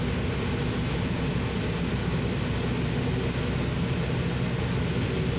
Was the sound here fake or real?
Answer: real